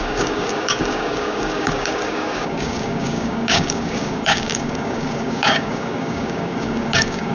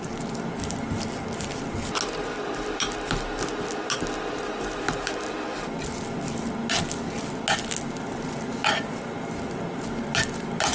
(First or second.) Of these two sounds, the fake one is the first